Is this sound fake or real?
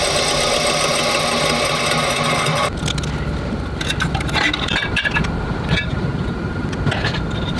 real